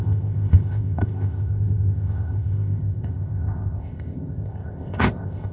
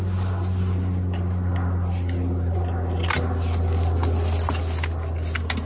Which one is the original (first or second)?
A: second